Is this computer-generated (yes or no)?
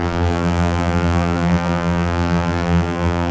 yes